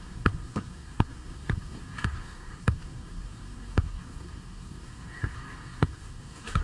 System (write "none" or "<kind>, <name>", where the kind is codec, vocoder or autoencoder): codec, SNAC